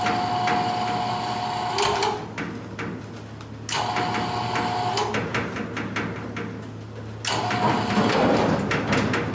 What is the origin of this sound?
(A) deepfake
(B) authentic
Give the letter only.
B